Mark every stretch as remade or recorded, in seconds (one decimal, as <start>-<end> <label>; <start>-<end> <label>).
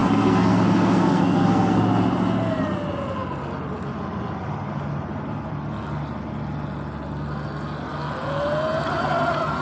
0.0-1.8 remade; 1.8-9.6 recorded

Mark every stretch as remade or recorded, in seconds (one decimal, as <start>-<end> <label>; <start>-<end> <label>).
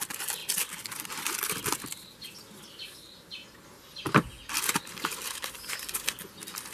0.0-0.4 remade; 0.4-2.6 recorded; 2.6-3.4 remade; 3.4-5.7 recorded; 5.7-6.7 remade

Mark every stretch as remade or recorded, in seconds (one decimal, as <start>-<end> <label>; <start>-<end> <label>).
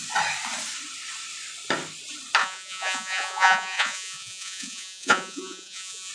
0.0-2.4 recorded; 2.4-6.1 remade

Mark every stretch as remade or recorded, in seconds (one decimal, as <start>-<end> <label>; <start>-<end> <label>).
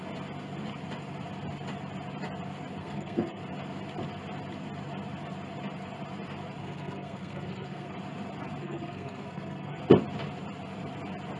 0.0-2.8 recorded; 2.8-3.4 remade; 3.4-6.6 recorded; 6.6-7.9 remade; 7.9-8.6 recorded; 8.6-9.8 remade; 9.8-11.4 recorded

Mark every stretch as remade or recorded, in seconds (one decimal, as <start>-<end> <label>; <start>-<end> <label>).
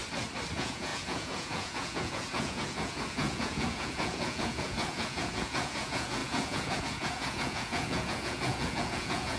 0.0-0.5 recorded; 0.5-9.4 remade